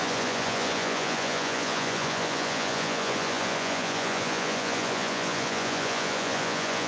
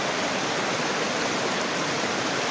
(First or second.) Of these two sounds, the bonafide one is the second